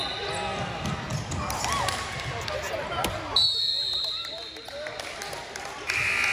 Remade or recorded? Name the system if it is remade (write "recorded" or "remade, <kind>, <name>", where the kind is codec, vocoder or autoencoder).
recorded